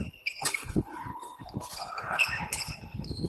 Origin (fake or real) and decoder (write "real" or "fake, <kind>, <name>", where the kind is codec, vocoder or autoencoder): fake, codec, HILCodec